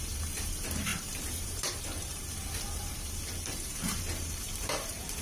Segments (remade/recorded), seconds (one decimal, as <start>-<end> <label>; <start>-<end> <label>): 0.0-5.2 remade